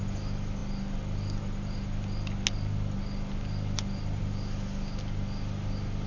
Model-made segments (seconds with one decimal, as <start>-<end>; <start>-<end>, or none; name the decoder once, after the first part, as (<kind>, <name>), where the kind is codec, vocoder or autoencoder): none